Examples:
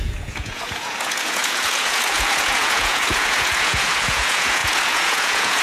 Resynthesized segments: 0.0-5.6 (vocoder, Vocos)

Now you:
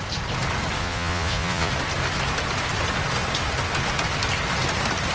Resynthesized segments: 0.8-1.7 (vocoder, Vocos)